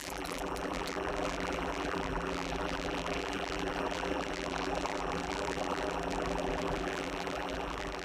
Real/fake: fake